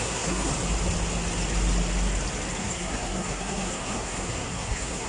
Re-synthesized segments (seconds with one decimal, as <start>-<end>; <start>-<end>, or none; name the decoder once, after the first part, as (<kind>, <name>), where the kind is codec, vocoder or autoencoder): 0.0-0.5 (codec, SNAC); 2.6-5.1